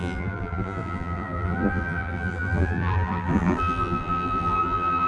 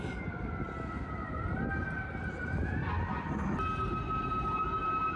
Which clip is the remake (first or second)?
first